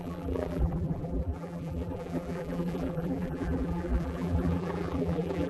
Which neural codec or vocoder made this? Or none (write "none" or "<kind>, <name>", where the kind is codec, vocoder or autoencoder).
vocoder, BigVGAN v2